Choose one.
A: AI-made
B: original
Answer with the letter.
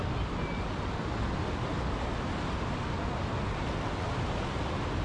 B